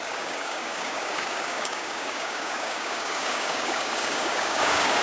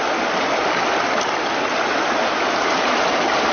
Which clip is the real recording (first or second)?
second